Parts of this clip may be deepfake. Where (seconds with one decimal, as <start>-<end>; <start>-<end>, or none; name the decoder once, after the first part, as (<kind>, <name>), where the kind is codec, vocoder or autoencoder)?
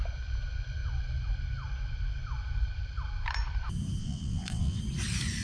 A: 4.0-4.8 (vocoder, WaveNeXt)